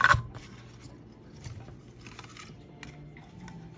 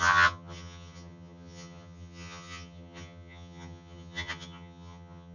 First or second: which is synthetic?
second